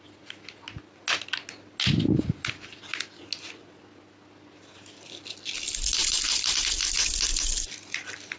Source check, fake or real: real